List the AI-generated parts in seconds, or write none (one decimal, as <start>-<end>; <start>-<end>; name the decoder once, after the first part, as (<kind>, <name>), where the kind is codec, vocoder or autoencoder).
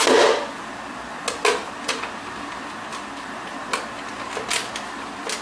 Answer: none